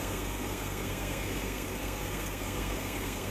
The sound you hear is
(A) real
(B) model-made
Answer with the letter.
B